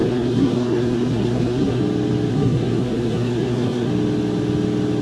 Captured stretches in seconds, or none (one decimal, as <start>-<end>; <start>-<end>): 1.8-2.3; 3.9-5.0